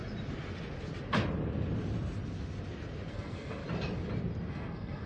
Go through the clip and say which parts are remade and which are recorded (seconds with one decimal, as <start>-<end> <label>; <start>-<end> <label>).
0.0-3.1 recorded; 3.1-3.6 remade; 3.6-4.5 recorded; 4.5-5.1 remade